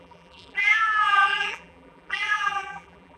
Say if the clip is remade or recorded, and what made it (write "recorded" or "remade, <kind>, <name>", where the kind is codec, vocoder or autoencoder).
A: remade, vocoder, BigVGAN v2